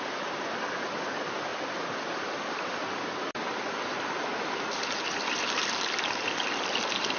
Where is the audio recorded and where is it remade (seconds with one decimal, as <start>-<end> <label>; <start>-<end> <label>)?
0.0-7.2 recorded